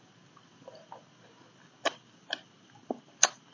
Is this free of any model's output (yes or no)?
yes